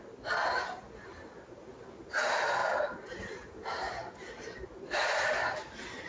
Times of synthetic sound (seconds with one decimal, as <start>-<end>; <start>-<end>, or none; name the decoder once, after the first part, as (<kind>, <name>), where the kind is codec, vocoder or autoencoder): 2.6-6.1 (vocoder, BigVGAN v2)